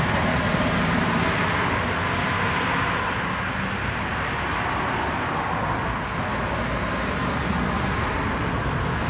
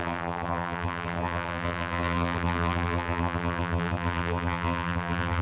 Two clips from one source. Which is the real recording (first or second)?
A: first